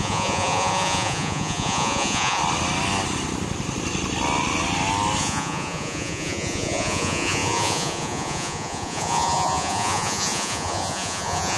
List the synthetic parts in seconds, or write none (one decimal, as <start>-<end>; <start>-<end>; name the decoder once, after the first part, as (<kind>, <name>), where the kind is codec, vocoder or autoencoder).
0.0-2.4 (vocoder, Vocos); 5.2-11.6